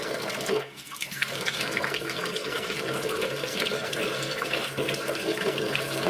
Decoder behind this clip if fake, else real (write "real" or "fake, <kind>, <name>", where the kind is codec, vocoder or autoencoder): fake, codec, SNAC